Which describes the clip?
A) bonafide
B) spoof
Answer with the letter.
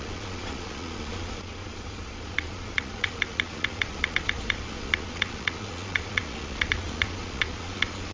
B